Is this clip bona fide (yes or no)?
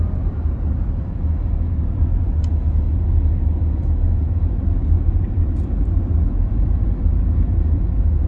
yes